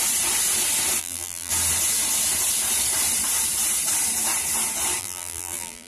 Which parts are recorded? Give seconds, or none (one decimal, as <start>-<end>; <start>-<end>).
0.0-1.0; 1.5-5.0